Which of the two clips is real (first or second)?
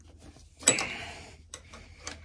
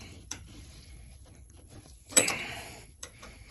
first